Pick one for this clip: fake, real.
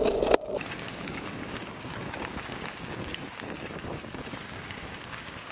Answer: fake